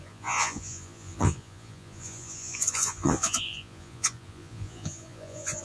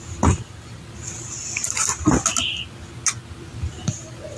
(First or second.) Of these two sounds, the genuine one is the second